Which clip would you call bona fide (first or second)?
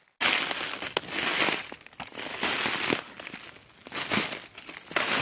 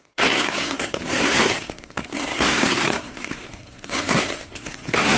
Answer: first